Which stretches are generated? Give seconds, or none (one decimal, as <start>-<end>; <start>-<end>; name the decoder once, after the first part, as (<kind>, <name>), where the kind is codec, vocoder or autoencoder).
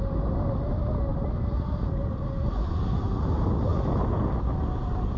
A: none